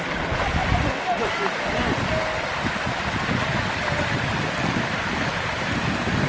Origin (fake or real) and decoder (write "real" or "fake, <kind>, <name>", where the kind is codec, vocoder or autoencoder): real